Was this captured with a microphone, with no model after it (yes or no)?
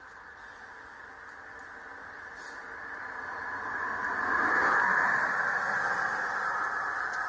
yes